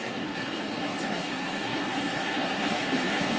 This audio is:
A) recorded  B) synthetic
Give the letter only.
B